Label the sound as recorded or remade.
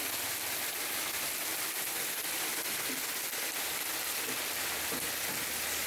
recorded